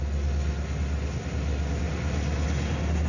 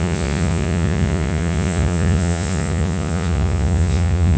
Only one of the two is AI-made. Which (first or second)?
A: second